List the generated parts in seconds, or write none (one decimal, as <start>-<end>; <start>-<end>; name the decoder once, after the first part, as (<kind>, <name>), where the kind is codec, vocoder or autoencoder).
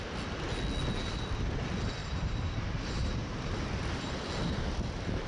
2.0-4.3 (vocoder, BigVGAN v2)